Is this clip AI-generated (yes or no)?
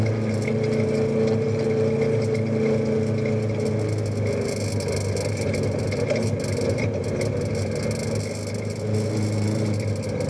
no